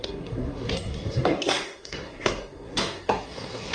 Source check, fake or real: fake